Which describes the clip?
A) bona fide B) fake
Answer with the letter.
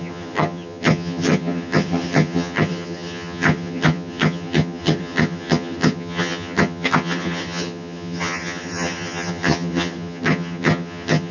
B